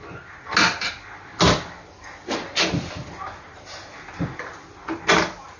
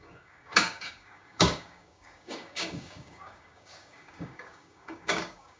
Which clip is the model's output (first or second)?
second